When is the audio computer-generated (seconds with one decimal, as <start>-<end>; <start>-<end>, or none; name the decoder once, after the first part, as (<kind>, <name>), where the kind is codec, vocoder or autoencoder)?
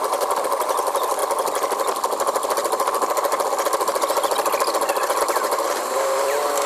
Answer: 0.0-1.2 (vocoder, BigVGAN v2); 5.2-6.7